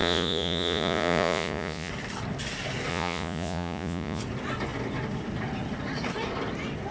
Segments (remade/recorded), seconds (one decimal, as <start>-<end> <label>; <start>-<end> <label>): 0.0-1.9 remade; 1.9-2.9 recorded; 2.9-4.2 remade; 4.2-6.9 recorded